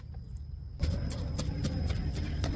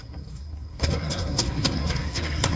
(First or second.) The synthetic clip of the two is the second